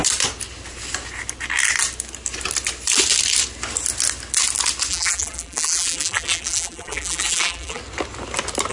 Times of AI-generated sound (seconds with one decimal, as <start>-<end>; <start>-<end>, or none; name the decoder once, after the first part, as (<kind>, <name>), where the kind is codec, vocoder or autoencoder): 4.9-7.8 (vocoder, BigVGAN v2)